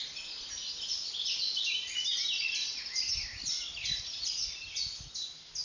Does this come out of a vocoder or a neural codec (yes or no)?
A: no